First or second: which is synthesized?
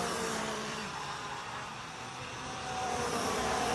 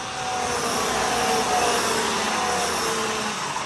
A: first